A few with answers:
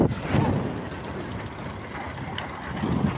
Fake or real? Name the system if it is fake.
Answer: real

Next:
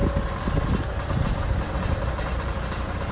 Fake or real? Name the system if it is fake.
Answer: real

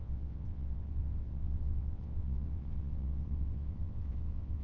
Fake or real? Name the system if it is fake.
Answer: fake, vocoder, WaveNeXt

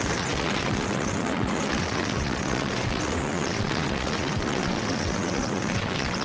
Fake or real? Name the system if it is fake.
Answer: fake, vocoder, WaveNeXt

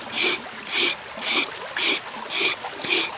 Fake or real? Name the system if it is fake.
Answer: real